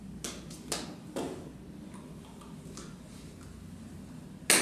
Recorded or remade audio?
recorded